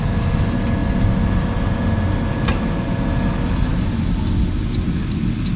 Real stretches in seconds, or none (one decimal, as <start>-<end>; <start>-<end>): 0.0-5.6